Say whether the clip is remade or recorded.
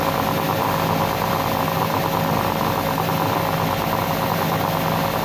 recorded